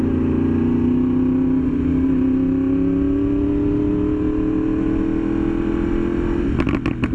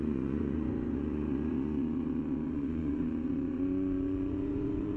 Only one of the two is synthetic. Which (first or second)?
second